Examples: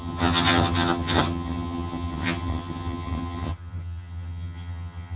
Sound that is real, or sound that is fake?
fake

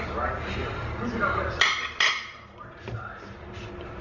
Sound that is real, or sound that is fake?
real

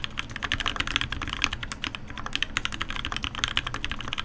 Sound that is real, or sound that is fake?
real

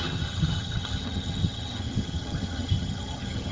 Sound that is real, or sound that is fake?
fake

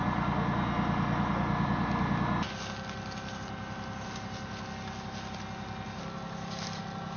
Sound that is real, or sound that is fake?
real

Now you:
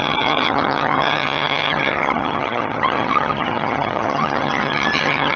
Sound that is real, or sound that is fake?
fake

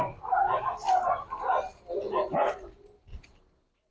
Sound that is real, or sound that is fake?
real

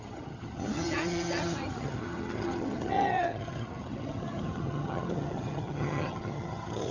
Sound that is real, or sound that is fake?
fake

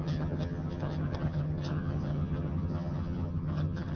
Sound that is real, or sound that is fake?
fake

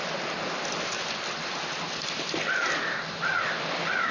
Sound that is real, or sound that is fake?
real